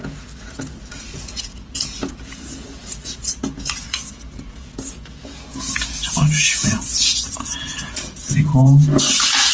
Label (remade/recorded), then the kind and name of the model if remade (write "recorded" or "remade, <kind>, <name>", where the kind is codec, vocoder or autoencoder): remade, vocoder, Vocos